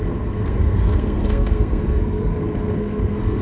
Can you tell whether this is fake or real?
fake